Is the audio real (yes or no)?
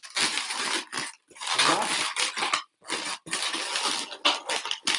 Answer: yes